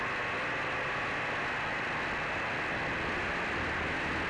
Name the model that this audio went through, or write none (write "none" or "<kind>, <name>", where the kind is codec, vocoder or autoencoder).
none